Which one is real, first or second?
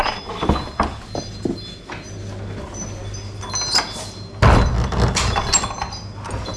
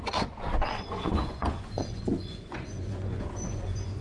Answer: first